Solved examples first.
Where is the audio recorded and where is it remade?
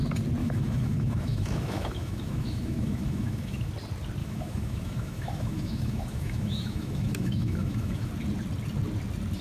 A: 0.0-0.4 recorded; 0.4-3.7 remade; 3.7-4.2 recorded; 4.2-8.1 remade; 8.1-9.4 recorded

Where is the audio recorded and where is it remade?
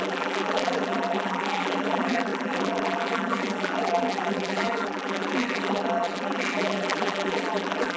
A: 0.0-8.0 remade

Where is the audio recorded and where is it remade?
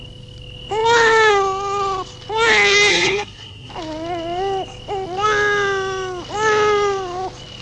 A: 0.0-2.9 recorded; 2.9-3.7 remade; 3.7-7.6 recorded